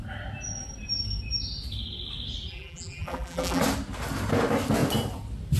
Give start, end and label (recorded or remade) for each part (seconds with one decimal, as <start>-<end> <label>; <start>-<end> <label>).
0.0-2.5 recorded; 2.5-3.6 remade; 3.6-5.6 recorded